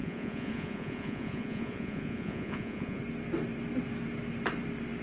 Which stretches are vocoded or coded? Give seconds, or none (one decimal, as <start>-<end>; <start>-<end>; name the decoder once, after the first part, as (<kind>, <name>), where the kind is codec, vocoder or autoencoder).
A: 0.0-3.0 (vocoder, Vocos)